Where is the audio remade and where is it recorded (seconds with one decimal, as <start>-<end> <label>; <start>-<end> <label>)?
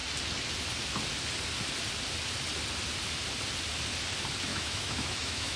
0.0-4.5 recorded; 4.5-5.6 remade